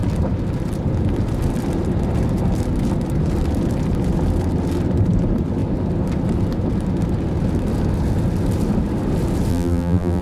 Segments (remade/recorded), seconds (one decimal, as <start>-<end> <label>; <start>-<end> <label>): 0.0-9.5 recorded; 9.5-10.2 remade